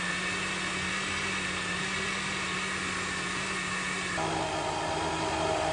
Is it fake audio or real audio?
real